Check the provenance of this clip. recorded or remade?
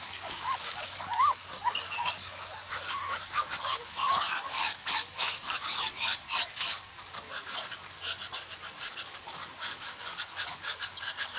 remade